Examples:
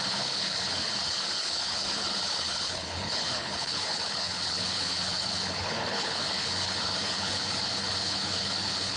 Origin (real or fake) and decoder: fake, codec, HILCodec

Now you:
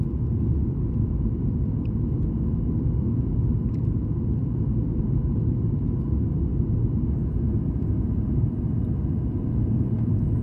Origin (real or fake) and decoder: real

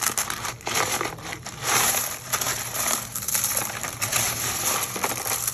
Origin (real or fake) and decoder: fake, vocoder, BigVGAN v2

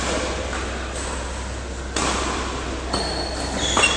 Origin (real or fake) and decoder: real